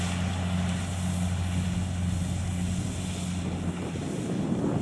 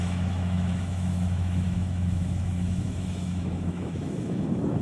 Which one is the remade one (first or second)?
second